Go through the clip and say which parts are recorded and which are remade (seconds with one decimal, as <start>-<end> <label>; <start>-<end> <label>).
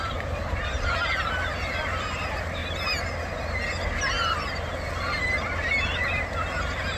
0.0-2.6 remade; 2.6-7.0 recorded